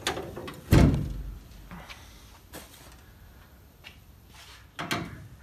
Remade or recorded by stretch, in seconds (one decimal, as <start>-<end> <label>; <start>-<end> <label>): 0.0-5.4 recorded